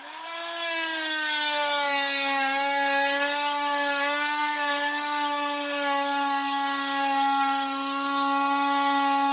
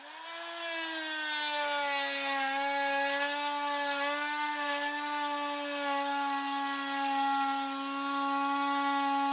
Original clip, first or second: second